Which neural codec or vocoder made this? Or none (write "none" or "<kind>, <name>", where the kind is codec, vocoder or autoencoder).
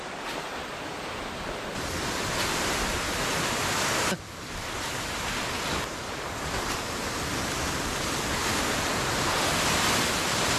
none